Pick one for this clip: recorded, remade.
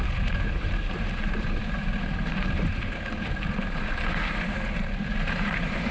remade